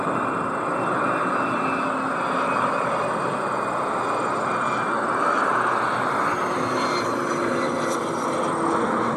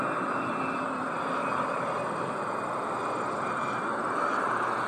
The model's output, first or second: second